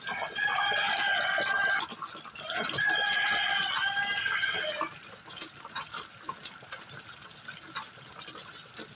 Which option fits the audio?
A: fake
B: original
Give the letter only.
A